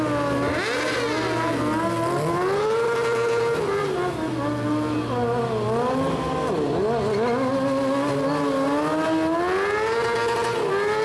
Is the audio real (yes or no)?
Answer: yes